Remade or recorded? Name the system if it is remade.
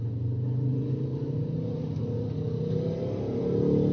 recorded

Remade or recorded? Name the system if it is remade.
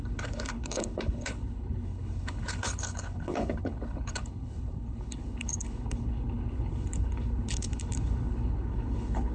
remade, codec, HILCodec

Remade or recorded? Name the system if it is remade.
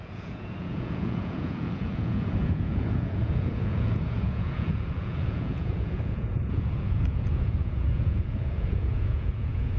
remade, vocoder, Vocos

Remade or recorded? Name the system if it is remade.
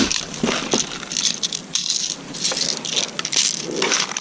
recorded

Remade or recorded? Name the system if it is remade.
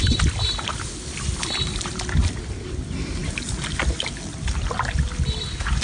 recorded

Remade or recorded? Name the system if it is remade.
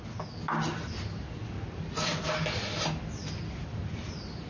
recorded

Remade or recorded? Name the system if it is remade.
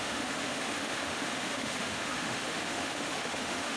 remade, autoencoder, DAC-VAE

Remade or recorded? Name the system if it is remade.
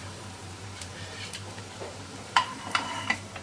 remade, vocoder, BigVGAN v2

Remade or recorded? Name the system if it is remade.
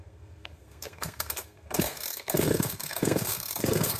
remade, codec, SNAC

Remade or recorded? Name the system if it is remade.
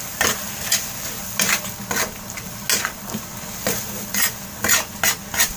recorded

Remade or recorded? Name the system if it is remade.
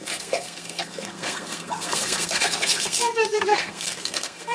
remade, codec, SNAC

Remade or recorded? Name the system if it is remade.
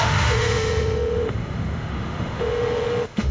remade, autoencoder, DAC-VAE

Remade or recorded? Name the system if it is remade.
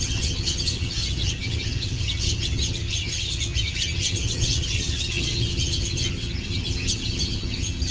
remade, vocoder, HiFi-GAN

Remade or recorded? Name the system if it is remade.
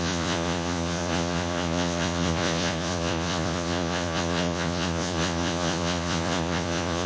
remade, vocoder, Vocos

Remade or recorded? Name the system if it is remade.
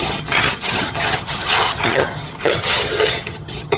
remade, vocoder, HiFi-GAN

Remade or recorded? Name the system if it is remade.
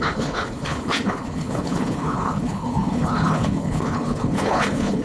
remade, codec, HILCodec